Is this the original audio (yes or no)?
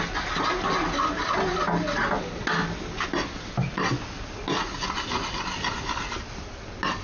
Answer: yes